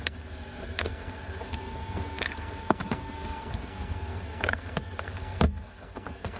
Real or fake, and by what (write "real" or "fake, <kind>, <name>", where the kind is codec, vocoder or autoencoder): fake, codec, SNAC